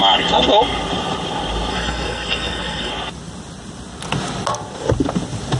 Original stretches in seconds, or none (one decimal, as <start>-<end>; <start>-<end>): 0.0-1.7; 2.9-5.6